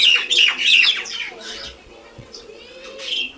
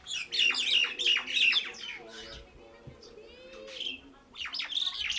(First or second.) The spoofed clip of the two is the first